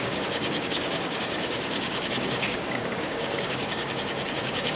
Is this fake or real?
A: fake